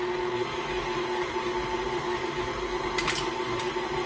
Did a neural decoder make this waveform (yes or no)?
no